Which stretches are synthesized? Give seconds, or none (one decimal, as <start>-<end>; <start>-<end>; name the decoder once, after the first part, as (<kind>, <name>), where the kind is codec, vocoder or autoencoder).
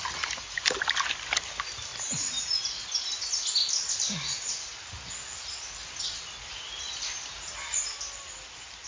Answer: none